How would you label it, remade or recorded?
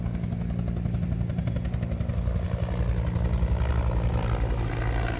recorded